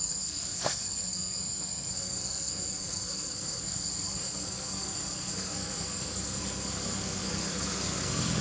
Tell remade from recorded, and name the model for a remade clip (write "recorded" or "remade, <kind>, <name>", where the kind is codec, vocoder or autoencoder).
remade, codec, SNAC